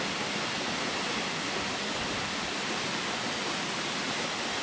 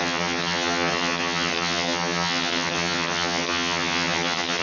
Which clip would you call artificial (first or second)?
second